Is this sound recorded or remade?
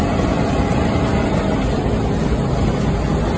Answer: recorded